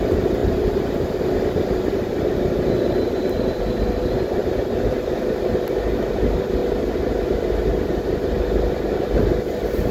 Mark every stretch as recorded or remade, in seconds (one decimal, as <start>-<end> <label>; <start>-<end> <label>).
0.0-9.9 recorded